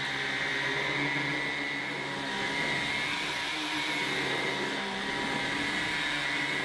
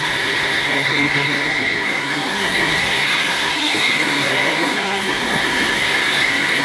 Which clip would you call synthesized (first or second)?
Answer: second